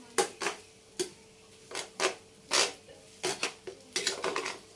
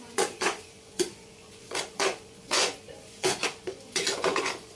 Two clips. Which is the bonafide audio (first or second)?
first